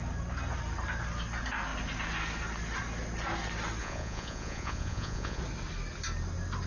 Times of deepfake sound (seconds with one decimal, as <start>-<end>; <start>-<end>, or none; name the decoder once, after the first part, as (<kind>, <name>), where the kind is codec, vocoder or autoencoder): 3.8-5.4 (vocoder, Vocos)